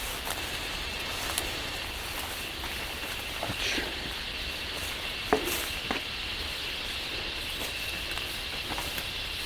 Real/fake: real